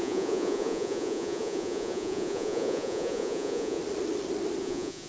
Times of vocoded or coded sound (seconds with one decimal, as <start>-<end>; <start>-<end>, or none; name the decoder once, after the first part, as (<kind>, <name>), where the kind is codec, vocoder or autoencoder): 0.0-3.8 (vocoder, Vocos); 4.6-5.1

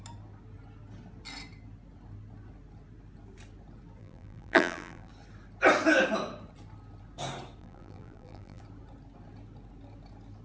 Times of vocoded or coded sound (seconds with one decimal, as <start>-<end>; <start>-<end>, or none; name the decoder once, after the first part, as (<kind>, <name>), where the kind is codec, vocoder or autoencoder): 4.0-5.1 (vocoder, BigVGAN v2); 7.6-8.6

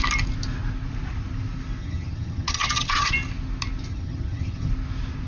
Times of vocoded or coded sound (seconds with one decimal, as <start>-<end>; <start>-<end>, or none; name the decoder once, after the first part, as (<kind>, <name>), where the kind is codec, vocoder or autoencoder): 1.8-3.1 (vocoder, HiFi-GAN); 3.9-4.7

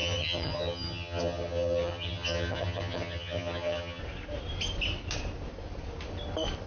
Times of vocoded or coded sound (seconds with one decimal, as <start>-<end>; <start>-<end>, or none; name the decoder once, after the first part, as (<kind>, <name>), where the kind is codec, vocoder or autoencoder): 0.0-4.0 (vocoder, HiFi-GAN)

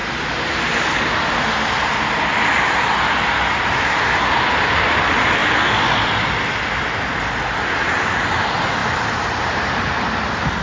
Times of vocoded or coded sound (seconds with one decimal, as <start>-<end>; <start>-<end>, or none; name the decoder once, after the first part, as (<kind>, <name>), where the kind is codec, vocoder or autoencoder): 8.8-9.8 (vocoder, BigVGAN v2)

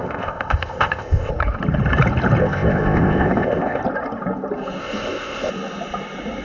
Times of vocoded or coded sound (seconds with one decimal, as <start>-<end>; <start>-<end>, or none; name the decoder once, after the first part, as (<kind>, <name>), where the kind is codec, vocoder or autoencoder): 0.0-1.3 (codec, ZipCodec); 2.4-3.8; 4.8-5.5

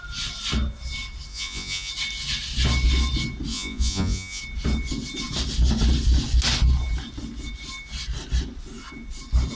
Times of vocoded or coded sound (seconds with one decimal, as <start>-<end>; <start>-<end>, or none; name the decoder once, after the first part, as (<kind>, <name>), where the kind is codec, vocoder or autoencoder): 1.3-1.9 (vocoder, Vocos); 3.5-4.4